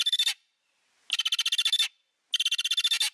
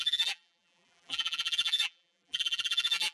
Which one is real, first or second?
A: first